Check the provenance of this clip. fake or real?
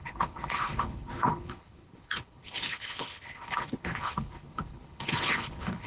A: fake